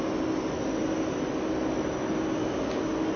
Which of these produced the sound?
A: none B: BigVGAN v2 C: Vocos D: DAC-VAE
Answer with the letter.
A